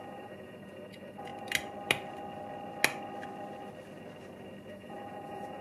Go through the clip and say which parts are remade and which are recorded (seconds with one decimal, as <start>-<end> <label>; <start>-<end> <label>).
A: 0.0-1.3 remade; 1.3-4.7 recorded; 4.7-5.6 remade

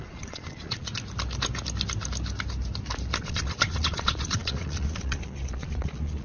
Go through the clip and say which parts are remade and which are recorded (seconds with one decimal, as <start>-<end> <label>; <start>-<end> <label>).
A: 0.0-0.9 remade; 0.9-3.2 recorded; 3.2-6.2 remade

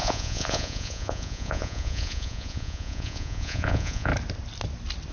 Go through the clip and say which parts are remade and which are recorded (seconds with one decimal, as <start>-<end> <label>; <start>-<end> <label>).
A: 0.0-4.1 remade; 4.1-5.1 recorded

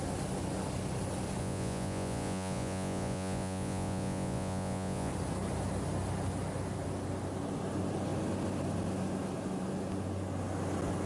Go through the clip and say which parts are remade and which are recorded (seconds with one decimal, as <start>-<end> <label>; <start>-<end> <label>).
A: 0.0-1.4 recorded; 1.4-5.1 remade; 5.1-11.1 recorded